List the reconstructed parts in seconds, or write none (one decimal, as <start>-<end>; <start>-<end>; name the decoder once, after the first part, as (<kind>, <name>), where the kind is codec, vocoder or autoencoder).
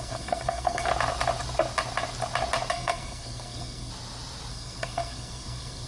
0.0-0.9 (codec, SNAC); 2.7-3.9; 4.5-5.9